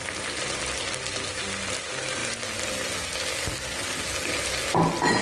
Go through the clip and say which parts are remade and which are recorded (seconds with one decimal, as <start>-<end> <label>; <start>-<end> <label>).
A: 0.0-5.2 recorded